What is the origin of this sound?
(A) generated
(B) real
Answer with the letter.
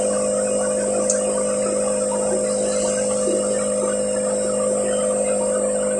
B